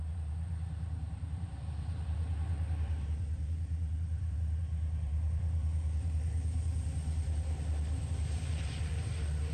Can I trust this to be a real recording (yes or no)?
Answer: no